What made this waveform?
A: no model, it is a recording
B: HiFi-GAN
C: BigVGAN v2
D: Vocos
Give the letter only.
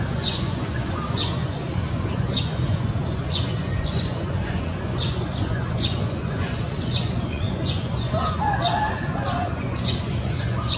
D